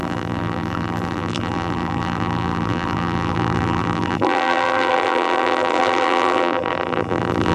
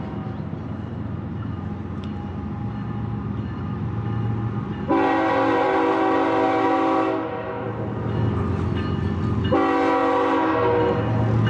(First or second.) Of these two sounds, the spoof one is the first